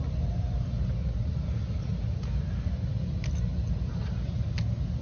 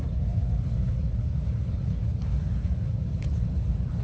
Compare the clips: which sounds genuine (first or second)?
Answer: first